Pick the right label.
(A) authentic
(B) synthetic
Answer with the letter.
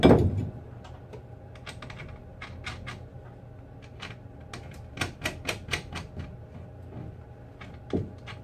A